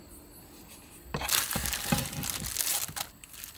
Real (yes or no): yes